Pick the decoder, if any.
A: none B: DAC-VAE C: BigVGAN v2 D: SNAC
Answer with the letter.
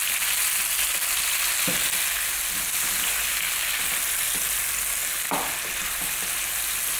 A